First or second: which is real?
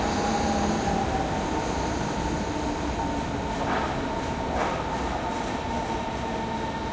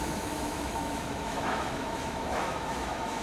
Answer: first